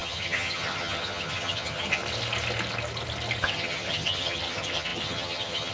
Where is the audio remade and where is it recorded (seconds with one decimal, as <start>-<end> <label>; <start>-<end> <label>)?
0.0-2.0 remade; 2.0-3.4 recorded; 3.4-5.7 remade